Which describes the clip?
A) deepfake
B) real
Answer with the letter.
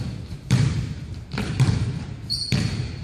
A